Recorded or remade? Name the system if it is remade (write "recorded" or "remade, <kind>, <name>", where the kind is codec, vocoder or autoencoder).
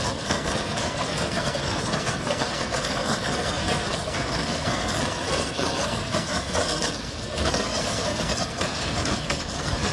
remade, codec, SNAC